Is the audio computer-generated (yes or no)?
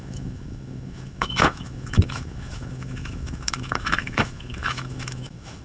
yes